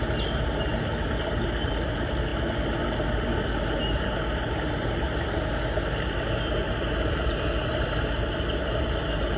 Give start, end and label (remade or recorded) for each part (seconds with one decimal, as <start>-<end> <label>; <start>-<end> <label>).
0.0-9.4 recorded